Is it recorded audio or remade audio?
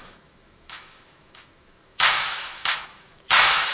remade